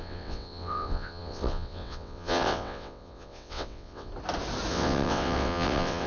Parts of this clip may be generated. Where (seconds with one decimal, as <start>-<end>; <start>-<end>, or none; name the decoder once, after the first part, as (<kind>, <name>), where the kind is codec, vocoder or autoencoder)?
0.0-4.1 (vocoder, WaveNeXt); 4.7-6.1